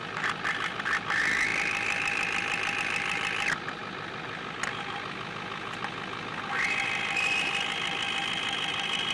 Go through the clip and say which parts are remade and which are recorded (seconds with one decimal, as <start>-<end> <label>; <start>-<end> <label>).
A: 0.0-9.1 recorded